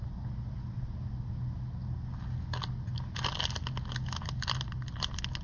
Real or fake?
real